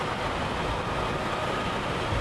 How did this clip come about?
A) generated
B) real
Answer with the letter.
B